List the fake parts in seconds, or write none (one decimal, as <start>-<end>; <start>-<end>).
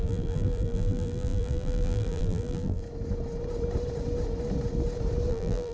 0.0-2.8; 5.3-5.7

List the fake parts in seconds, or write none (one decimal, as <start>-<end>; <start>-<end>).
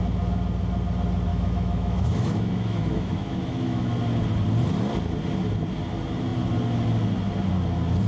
1.3-3.9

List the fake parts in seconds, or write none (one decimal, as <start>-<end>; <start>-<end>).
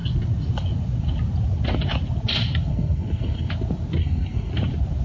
2.7-3.5; 4.0-4.5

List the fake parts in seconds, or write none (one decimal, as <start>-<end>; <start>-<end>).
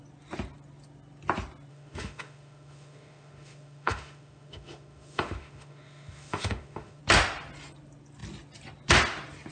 1.7-7.0